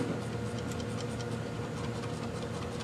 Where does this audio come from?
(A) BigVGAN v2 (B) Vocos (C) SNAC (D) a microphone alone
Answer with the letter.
D